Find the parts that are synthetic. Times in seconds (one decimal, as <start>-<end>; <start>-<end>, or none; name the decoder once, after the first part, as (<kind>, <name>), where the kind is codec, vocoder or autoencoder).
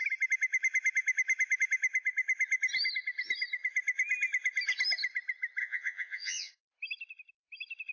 5.6-6.5 (vocoder, Vocos)